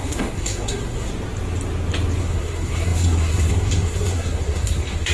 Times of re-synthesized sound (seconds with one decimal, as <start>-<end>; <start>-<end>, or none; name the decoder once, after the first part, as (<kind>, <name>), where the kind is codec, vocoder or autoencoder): 0.0-1.1 (codec, SNAC); 2.2-5.1